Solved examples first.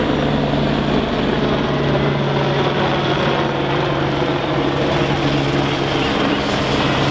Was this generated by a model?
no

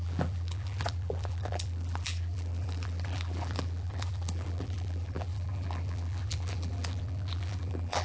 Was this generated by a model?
yes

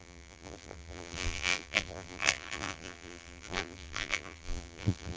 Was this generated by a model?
yes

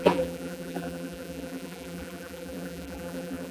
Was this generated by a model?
yes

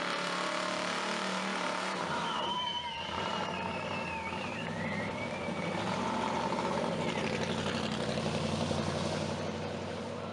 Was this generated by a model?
yes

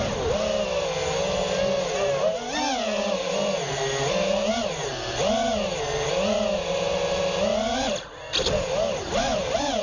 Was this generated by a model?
no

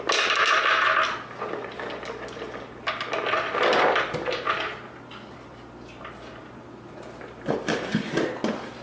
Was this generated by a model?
no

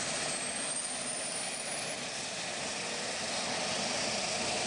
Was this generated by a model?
no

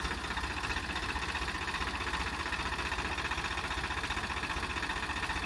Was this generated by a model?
no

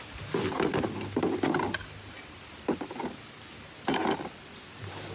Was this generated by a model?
no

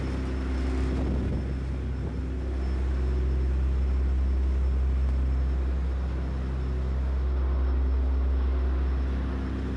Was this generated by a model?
no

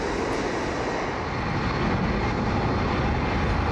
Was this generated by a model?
no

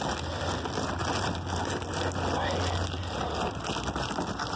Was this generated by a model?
no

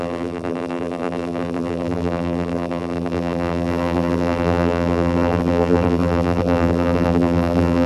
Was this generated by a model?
yes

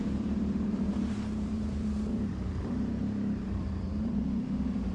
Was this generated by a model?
yes